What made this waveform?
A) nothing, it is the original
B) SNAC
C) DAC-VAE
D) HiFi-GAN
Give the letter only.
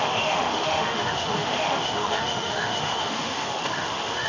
C